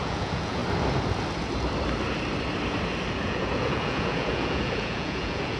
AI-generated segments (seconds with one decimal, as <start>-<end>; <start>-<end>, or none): 0.0-0.6; 3.2-5.6